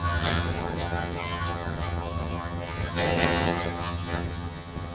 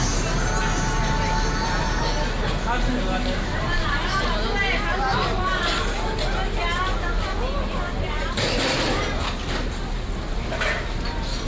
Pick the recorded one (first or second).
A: second